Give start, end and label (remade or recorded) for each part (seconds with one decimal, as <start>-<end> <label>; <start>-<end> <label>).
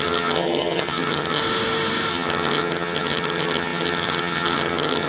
0.0-1.4 remade; 1.4-2.1 recorded; 2.1-5.1 remade